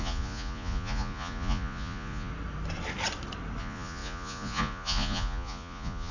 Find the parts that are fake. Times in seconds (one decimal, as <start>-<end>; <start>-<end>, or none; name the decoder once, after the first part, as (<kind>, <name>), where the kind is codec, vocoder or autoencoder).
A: 0.0-2.3 (vocoder, Vocos); 3.6-6.1

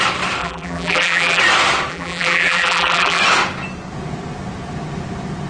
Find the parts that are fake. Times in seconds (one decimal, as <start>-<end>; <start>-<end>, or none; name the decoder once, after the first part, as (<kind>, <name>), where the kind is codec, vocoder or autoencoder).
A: 0.4-1.4 (vocoder, BigVGAN v2); 1.9-3.2

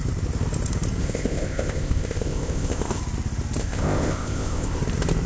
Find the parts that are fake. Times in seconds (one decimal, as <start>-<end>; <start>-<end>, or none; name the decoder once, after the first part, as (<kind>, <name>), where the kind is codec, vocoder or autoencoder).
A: 1.0-3.0 (codec, ZipCodec); 3.6-4.8

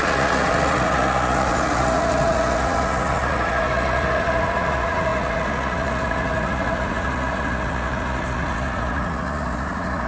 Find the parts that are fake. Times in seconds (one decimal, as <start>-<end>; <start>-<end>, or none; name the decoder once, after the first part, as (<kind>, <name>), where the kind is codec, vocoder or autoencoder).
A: 0.0-10.1 (vocoder, Vocos)

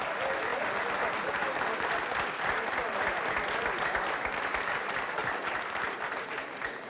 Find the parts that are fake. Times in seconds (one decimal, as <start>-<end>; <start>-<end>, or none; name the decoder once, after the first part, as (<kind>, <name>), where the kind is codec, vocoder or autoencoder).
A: none

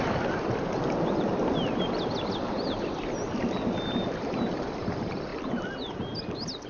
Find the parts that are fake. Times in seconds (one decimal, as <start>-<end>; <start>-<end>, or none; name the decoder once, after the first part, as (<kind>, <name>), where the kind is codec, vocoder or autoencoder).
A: none

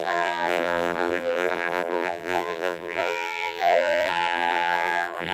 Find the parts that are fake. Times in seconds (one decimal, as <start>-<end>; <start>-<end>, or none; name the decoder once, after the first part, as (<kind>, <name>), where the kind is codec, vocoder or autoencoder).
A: 0.0-5.3 (vocoder, BigVGAN v2)